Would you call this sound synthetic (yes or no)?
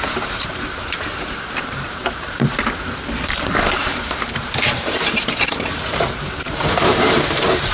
yes